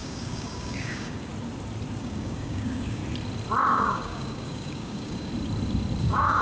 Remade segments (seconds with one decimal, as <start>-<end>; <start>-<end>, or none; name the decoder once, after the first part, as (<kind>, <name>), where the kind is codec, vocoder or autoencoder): 0.0-1.3 (codec, DAC); 2.0-3.0; 3.7-5.3; 6.0-6.4